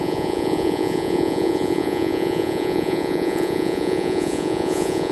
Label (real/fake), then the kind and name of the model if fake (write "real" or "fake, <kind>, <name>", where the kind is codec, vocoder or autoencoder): fake, vocoder, Vocos